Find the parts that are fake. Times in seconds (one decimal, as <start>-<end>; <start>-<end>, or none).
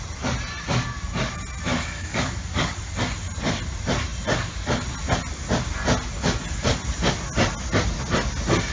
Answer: 1.7-2.8